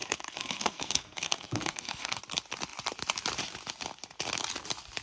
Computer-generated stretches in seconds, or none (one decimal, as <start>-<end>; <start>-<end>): 0.0-2.2